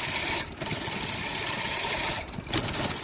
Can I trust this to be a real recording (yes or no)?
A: yes